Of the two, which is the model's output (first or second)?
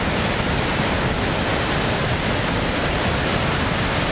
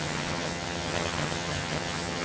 second